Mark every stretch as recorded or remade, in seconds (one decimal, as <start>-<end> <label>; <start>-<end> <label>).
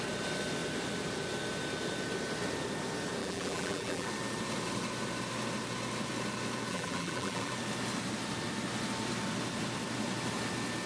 0.0-3.2 recorded; 3.2-4.1 remade; 4.1-6.7 recorded; 6.7-7.5 remade; 7.5-10.9 recorded